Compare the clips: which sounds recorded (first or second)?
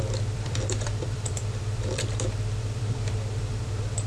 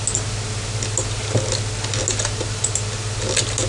second